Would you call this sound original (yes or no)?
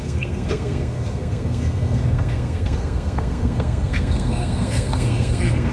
no